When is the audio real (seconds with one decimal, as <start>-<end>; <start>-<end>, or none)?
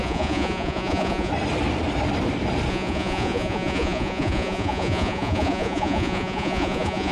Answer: 1.3-2.7